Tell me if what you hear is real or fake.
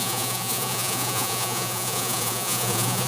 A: fake